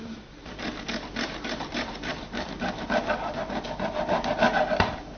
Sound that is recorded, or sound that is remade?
remade